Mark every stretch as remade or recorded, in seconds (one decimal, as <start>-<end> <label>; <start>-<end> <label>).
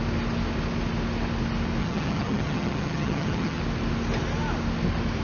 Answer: 0.0-1.8 recorded; 1.8-3.6 remade; 3.6-5.2 recorded